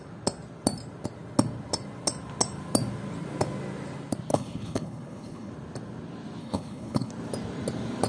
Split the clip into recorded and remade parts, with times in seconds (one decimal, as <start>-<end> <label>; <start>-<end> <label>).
0.0-4.3 recorded; 4.3-5.5 remade; 5.5-6.4 recorded; 6.4-7.1 remade; 7.1-8.1 recorded